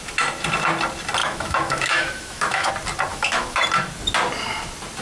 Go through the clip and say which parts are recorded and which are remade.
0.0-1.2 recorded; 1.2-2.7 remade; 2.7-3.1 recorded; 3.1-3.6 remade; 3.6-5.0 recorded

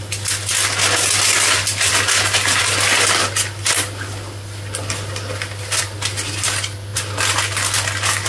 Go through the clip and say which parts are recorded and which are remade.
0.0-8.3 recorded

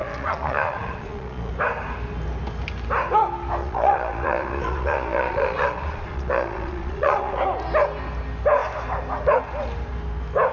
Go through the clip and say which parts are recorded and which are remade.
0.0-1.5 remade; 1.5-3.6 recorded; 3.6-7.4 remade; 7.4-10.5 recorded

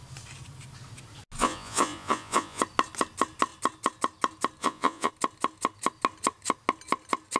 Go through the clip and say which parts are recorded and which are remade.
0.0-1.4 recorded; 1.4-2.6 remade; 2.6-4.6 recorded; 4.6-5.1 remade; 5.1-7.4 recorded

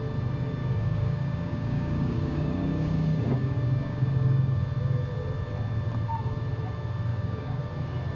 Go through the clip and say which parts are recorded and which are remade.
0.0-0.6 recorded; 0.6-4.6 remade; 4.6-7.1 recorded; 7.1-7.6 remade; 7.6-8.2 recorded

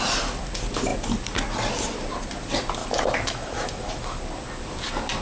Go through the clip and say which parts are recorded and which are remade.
0.0-2.8 recorded; 2.8-4.2 remade; 4.2-5.2 recorded

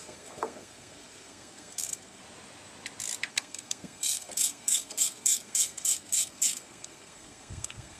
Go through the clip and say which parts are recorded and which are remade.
0.0-2.2 remade; 2.2-3.3 recorded; 3.3-8.0 remade